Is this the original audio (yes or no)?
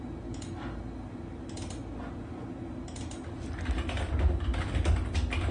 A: yes